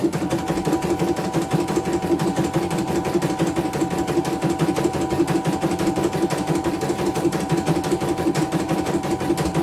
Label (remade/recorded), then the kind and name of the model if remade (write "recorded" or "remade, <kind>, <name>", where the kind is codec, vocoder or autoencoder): recorded